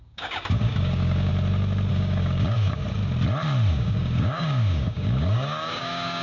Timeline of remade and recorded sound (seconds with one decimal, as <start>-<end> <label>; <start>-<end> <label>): 0.0-1.3 remade; 1.3-1.9 recorded; 1.9-2.8 remade; 2.8-3.7 recorded; 3.7-6.2 remade